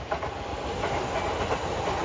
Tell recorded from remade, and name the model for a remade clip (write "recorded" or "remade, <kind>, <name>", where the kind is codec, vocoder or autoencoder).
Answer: recorded